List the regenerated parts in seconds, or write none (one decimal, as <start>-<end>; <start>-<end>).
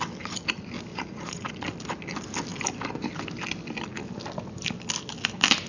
0.9-1.5